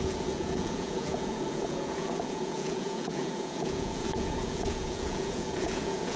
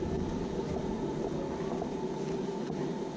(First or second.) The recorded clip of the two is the second